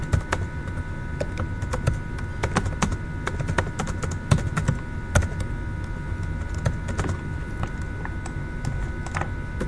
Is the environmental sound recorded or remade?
recorded